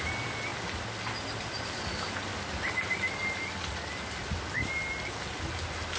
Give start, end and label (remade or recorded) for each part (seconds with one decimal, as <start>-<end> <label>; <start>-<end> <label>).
0.0-6.0 recorded